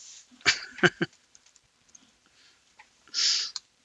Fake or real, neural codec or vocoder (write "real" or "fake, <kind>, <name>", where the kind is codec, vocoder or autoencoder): fake, vocoder, BigVGAN v2